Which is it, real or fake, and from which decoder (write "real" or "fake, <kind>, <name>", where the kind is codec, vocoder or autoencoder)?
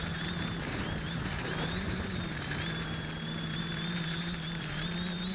fake, vocoder, BigVGAN v2